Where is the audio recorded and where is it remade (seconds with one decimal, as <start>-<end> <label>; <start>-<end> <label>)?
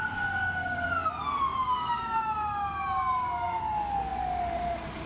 0.0-0.4 recorded; 0.4-1.1 remade; 1.1-1.5 recorded; 1.5-3.5 remade; 3.5-5.1 recorded